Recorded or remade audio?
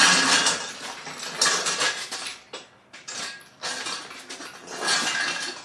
recorded